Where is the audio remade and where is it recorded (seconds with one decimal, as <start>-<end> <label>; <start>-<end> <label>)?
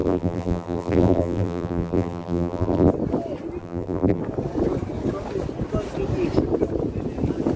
0.0-2.9 remade; 2.9-3.6 recorded; 3.6-4.2 remade; 4.2-7.6 recorded